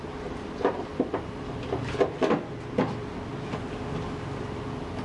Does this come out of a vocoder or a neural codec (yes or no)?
no